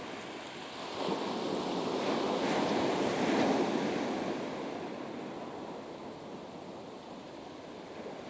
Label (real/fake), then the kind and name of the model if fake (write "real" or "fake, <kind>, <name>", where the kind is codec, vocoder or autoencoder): real